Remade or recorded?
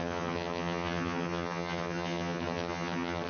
remade